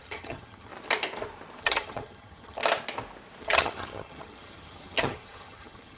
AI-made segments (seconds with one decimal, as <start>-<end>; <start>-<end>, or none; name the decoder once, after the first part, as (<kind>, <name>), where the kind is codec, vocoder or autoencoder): 0.0-0.7 (vocoder, HiFi-GAN); 1.6-2.6; 3.4-6.0